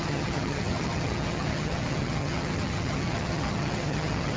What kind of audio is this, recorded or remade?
remade